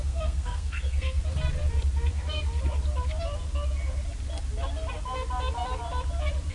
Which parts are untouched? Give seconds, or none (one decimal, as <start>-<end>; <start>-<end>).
1.2-2.1; 2.5-6.5